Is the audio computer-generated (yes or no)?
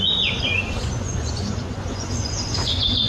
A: yes